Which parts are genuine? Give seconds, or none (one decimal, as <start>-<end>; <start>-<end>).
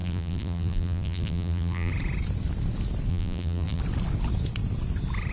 1.9-3.1; 3.8-5.3